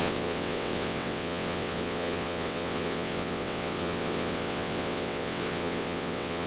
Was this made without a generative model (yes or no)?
no